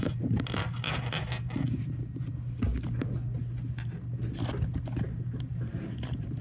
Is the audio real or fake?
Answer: real